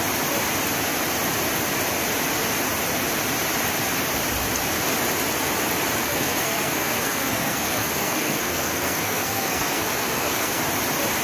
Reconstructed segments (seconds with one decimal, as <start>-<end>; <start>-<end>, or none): 6.0-10.6